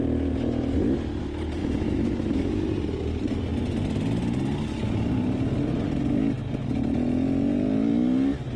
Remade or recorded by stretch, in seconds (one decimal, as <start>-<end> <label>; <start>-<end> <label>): 0.0-1.6 recorded; 1.6-2.7 remade; 2.7-8.6 recorded

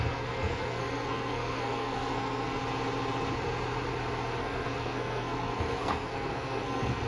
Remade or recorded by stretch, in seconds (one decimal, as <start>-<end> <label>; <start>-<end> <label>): 0.0-2.6 remade; 2.6-4.4 recorded; 4.4-7.1 remade

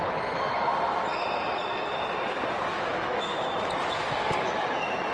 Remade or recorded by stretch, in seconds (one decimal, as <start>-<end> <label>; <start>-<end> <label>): 0.0-2.7 recorded; 2.7-5.1 remade

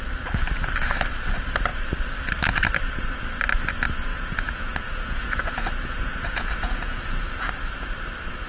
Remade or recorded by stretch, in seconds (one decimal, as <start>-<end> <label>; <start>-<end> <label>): 0.0-4.1 recorded; 4.1-7.5 remade; 7.5-8.5 recorded

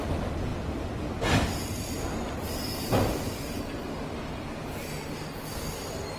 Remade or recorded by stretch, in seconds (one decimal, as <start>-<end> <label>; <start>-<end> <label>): 0.0-6.2 recorded